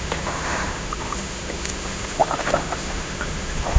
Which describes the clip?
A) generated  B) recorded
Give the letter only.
A